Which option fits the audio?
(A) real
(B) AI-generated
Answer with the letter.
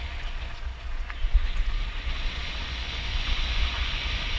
B